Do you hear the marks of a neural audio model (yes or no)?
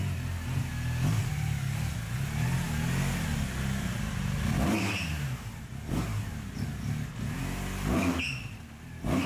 no